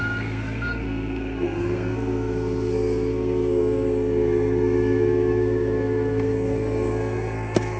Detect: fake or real fake